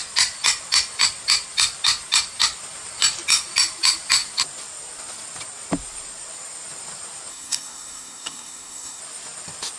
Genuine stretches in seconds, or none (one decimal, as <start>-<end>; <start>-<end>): 0.0-7.3; 9.0-9.8

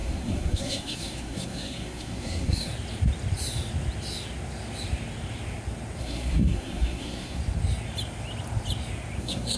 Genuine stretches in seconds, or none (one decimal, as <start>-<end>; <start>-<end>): 2.7-6.0; 7.4-9.2

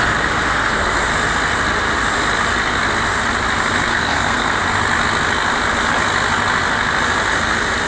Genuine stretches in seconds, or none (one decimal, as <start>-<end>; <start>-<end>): 0.0-0.5; 1.1-3.9; 4.6-7.9

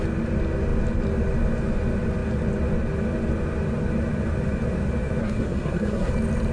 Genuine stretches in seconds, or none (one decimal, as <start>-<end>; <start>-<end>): 0.0-5.2; 6.1-6.5

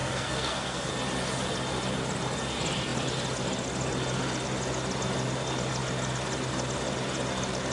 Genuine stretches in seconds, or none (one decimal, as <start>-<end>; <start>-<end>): 0.9-7.7